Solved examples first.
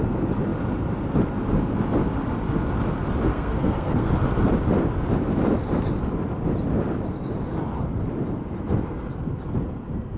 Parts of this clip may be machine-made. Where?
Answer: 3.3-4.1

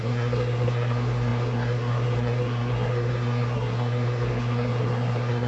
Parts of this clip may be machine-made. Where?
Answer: 0.0-5.5